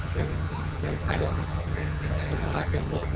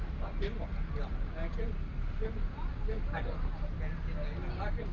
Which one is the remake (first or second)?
first